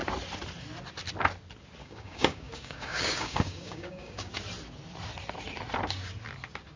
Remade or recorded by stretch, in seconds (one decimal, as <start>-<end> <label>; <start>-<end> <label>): 0.0-1.8 recorded; 1.8-4.3 remade; 4.3-6.8 recorded